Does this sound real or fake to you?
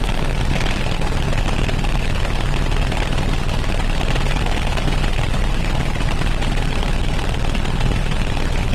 fake